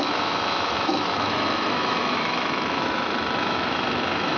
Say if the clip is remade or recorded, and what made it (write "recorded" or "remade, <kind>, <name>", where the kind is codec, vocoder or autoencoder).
remade, autoencoder, DAC-VAE